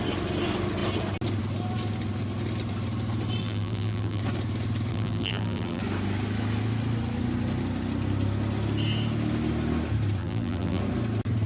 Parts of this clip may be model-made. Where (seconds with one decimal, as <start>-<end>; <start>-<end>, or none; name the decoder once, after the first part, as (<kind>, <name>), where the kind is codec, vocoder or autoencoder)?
3.4-4.2 (vocoder, BigVGAN v2); 4.9-5.8; 10.2-10.8

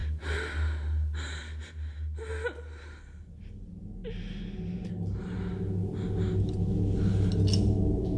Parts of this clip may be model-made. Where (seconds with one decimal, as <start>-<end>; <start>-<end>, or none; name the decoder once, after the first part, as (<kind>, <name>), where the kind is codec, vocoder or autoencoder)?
none

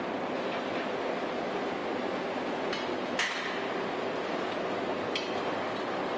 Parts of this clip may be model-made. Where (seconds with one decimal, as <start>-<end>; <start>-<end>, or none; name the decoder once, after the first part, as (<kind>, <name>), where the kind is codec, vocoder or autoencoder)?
none

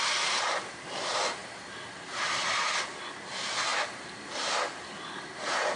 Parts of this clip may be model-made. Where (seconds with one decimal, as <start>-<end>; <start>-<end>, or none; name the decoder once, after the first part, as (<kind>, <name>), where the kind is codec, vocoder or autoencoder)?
none

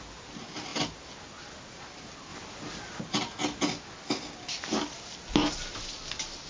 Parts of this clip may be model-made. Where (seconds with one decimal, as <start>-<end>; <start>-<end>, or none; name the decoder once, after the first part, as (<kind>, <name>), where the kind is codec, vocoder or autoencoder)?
none

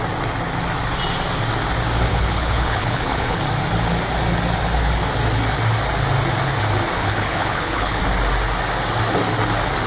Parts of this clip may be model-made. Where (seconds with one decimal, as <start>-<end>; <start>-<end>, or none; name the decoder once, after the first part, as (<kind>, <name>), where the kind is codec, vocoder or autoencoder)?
2.1-3.4 (codec, HILCodec); 7.0-8.0

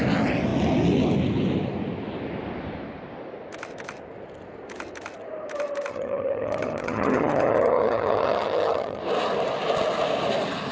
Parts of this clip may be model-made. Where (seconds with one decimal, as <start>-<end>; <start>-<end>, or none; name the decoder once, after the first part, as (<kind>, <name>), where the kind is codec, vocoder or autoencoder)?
5.9-9.0 (vocoder, HiFi-GAN)

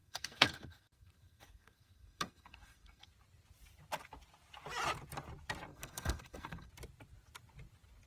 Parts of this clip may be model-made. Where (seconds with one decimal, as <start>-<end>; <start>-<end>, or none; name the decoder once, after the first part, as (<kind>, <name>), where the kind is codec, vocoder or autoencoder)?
0.0-3.1 (codec, SNAC); 5.7-6.7